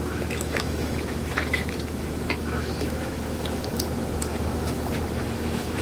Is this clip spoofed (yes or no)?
yes